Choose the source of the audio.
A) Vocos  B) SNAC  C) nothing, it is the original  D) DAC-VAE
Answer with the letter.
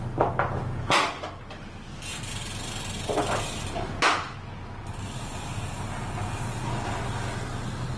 C